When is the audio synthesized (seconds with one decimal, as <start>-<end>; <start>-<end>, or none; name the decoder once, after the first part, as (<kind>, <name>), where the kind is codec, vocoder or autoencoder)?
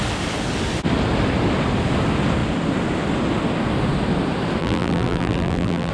4.6-5.9 (vocoder, BigVGAN v2)